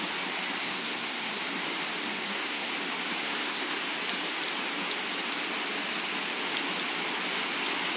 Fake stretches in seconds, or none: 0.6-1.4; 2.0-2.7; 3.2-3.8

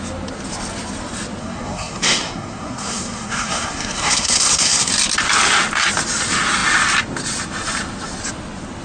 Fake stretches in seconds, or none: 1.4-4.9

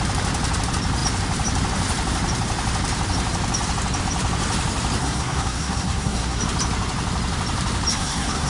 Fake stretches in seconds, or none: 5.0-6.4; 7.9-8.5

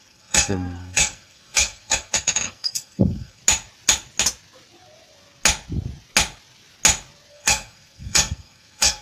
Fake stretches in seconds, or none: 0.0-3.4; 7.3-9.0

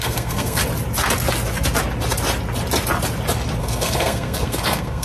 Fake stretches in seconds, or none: 0.0-0.6; 3.6-5.0